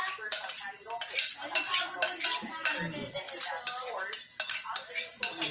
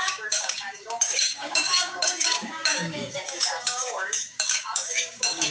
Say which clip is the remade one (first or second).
second